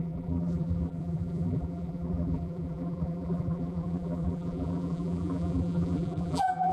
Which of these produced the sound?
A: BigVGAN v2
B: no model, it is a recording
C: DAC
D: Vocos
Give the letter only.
A